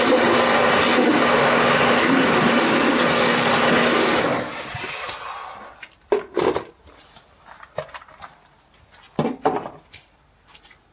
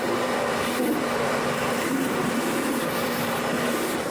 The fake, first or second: second